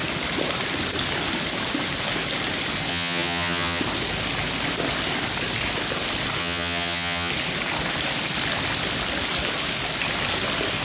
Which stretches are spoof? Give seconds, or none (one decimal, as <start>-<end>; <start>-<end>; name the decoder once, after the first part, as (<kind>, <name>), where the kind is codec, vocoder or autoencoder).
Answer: 2.9-3.8 (vocoder, HiFi-GAN); 6.4-7.3